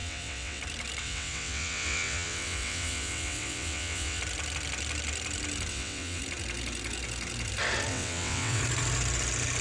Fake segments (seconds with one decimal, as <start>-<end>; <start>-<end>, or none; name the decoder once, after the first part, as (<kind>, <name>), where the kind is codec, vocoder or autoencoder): 0.0-0.6 (vocoder, WaveNeXt); 1.0-4.2; 5.7-6.2; 7.9-8.6